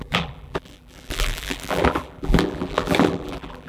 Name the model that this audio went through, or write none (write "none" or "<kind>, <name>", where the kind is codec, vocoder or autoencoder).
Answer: vocoder, BigVGAN v2